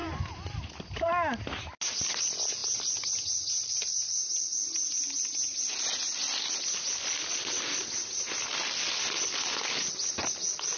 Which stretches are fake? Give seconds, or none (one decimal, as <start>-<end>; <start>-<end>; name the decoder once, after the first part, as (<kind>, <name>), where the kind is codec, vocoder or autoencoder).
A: none